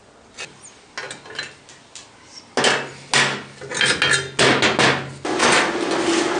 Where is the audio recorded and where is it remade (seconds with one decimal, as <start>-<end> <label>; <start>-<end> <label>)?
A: 0.0-6.4 recorded